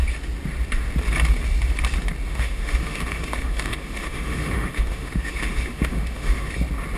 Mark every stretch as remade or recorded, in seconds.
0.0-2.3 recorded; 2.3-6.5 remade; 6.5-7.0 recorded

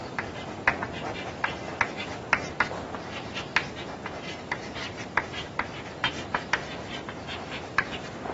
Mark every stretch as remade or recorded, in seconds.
0.0-2.9 recorded; 2.9-3.5 remade; 3.5-4.5 recorded; 4.5-8.3 remade

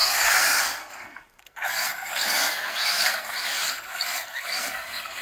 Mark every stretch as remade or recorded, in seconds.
0.0-5.2 remade

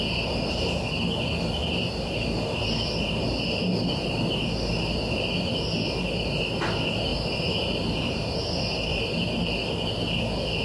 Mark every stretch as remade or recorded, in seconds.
0.0-7.1 recorded; 7.1-8.3 remade; 8.3-8.9 recorded; 8.9-9.5 remade; 9.5-10.6 recorded

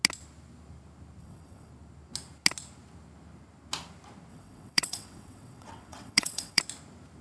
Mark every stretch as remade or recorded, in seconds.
0.0-1.2 recorded; 1.2-1.7 remade; 1.7-4.3 recorded; 4.3-6.6 remade; 6.6-7.2 recorded

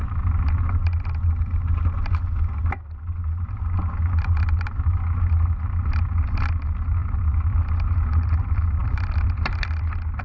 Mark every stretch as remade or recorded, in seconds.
0.0-10.2 recorded

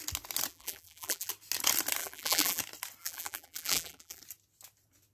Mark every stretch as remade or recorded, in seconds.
0.0-0.5 recorded; 0.5-1.3 remade; 1.3-2.0 recorded; 2.0-2.6 remade; 2.6-3.0 recorded; 3.0-4.2 remade; 4.2-5.1 recorded

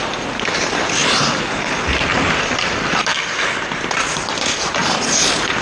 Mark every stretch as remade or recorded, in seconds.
0.0-1.0 remade; 1.0-2.1 recorded; 2.1-5.6 remade